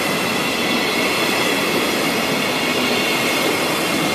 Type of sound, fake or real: real